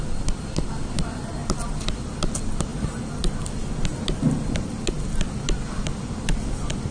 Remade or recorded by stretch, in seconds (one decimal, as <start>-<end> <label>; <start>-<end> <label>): 0.0-6.9 recorded